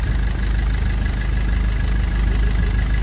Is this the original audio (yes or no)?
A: yes